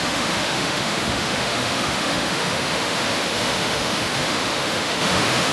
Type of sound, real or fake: fake